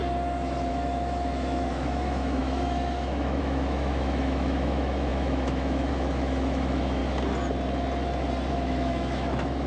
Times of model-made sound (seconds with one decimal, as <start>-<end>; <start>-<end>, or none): 0.7-7.0; 8.5-9.7